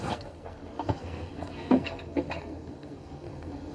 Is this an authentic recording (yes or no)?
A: no